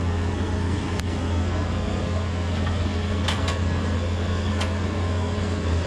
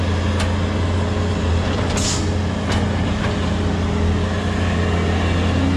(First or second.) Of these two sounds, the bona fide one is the second